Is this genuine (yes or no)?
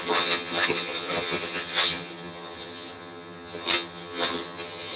no